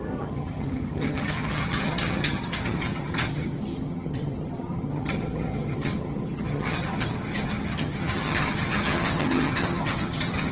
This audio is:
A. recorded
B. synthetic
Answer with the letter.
B